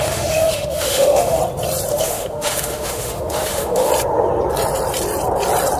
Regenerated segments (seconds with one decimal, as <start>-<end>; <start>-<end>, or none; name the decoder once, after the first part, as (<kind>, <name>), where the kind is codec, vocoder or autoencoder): 0.0-1.4 (autoencoder, DAC-VAE); 1.9-3.9